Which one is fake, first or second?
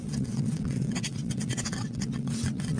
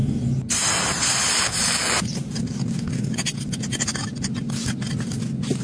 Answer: first